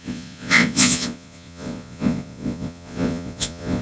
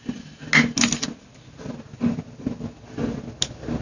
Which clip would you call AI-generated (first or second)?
first